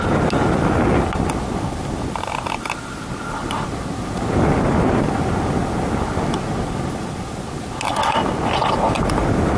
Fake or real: real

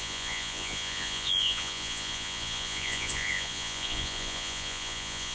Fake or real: fake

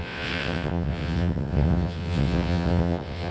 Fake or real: fake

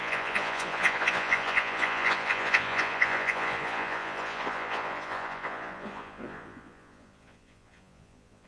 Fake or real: fake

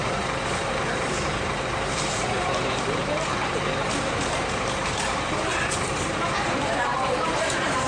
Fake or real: fake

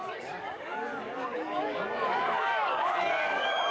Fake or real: fake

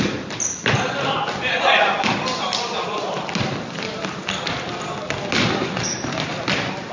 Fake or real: real